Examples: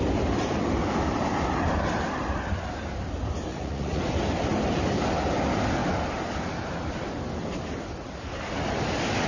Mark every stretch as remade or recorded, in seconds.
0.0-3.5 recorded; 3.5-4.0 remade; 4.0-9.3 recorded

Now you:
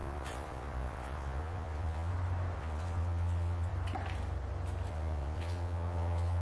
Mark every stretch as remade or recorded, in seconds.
0.0-2.1 remade; 2.1-2.6 recorded; 2.6-3.7 remade; 3.7-4.9 recorded; 4.9-6.4 remade

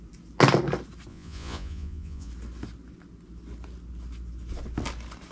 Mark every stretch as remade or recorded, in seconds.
0.0-1.1 recorded; 1.1-2.3 remade; 2.3-5.3 recorded

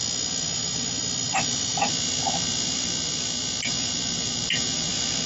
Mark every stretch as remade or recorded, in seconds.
0.0-5.3 recorded

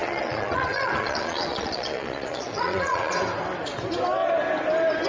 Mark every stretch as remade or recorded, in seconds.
0.0-3.1 remade; 3.1-5.1 recorded

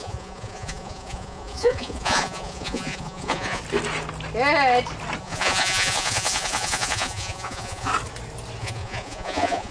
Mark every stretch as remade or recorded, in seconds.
0.0-3.6 remade; 3.6-5.2 recorded; 5.2-7.9 remade; 7.9-8.6 recorded; 8.6-9.7 remade

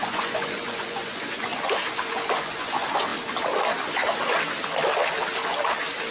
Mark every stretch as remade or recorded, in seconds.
0.0-1.5 remade; 1.5-2.1 recorded; 2.1-3.1 remade; 3.1-6.1 recorded